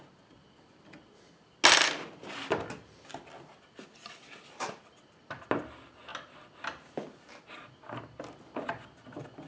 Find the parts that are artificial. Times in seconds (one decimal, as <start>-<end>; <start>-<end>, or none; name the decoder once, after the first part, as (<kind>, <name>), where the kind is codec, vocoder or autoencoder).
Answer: none